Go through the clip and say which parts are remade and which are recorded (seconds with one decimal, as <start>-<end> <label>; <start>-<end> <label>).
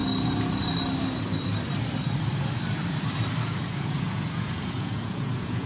0.0-3.4 recorded; 3.4-5.7 remade